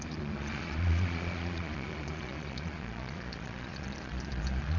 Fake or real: fake